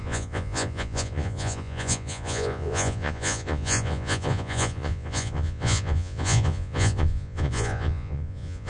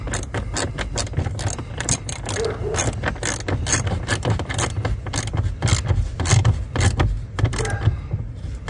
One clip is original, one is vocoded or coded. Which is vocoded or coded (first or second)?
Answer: first